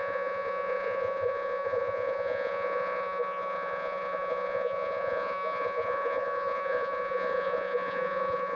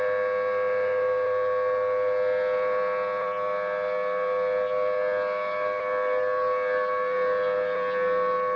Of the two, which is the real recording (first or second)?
second